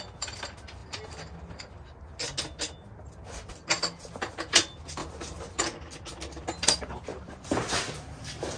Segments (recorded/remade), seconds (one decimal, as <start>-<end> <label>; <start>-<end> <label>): 0.0-5.0 recorded; 5.0-5.6 remade; 5.6-7.1 recorded; 7.1-7.7 remade; 7.7-8.6 recorded